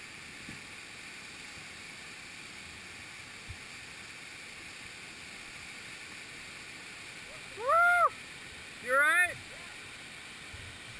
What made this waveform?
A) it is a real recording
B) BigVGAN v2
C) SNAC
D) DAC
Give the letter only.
A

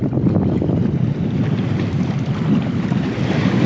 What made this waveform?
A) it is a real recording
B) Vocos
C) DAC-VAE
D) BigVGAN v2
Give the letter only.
A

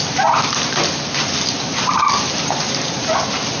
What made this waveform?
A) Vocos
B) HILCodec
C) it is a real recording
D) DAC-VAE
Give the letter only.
C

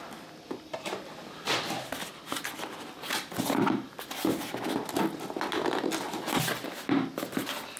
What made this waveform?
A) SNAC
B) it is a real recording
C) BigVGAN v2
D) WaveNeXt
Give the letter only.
B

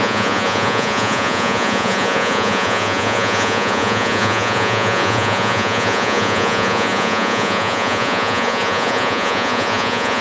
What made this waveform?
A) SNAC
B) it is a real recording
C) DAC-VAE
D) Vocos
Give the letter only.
D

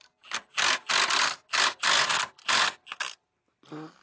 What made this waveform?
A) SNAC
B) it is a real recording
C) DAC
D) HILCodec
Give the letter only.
B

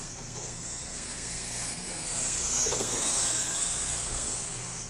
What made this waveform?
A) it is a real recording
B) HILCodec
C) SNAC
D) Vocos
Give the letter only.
C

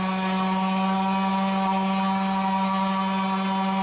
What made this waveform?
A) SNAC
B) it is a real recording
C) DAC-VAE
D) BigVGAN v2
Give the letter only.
B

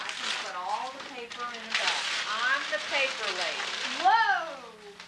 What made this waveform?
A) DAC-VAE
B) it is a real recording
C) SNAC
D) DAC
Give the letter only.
B